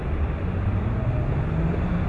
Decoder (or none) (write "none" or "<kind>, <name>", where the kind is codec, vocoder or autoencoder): none